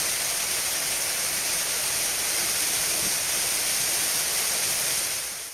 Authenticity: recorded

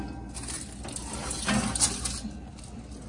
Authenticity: recorded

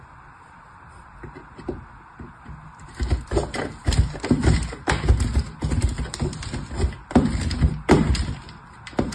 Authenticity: recorded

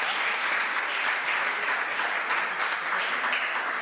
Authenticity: recorded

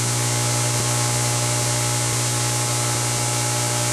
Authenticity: recorded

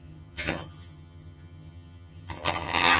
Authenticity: remade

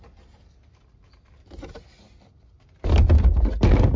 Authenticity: recorded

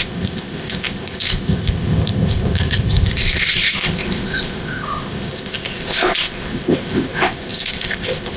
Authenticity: remade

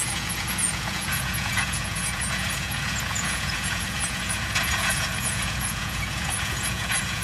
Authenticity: remade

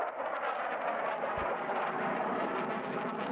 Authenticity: recorded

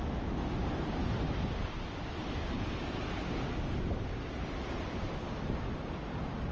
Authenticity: recorded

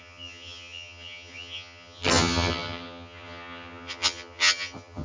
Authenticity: remade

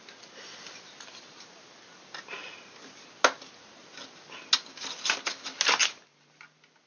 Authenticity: recorded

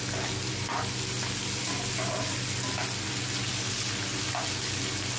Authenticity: recorded